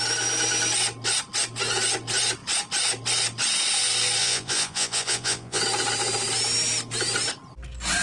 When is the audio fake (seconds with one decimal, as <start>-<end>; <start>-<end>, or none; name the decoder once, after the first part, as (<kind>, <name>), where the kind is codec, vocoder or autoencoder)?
4.2-5.6 (vocoder, Vocos)